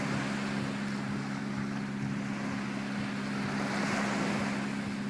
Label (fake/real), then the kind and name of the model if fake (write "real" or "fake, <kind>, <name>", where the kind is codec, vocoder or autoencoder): real